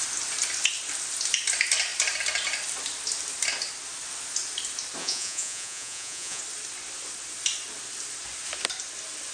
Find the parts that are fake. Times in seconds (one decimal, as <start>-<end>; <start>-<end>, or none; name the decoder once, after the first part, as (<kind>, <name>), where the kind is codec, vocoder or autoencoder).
5.0-6.4 (vocoder, Vocos)